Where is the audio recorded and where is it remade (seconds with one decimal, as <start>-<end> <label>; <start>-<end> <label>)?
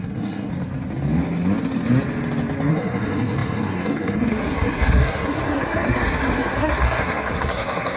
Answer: 0.0-0.5 remade; 0.5-2.7 recorded; 2.7-8.0 remade